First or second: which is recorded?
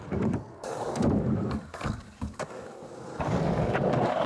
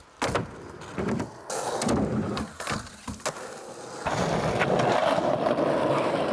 second